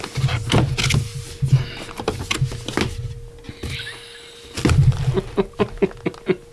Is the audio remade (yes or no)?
no